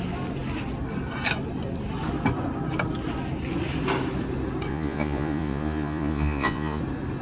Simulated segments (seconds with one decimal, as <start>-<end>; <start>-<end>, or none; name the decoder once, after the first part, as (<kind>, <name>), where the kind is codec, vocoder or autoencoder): 4.7-6.8 (vocoder, Vocos)